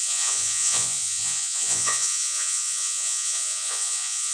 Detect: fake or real fake